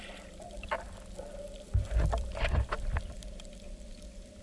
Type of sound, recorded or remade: remade